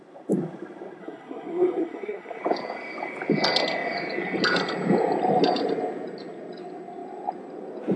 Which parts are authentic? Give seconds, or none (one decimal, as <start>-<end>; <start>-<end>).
0.0-1.0; 2.4-8.0